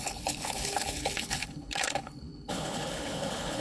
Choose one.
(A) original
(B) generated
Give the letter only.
B